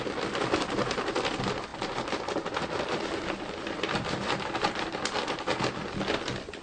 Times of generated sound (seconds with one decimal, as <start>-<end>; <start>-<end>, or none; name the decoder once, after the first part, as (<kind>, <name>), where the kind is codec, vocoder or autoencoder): none